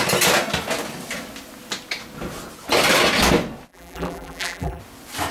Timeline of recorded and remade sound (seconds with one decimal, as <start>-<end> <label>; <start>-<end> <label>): 0.0-3.7 recorded; 3.7-4.8 remade; 4.8-5.3 recorded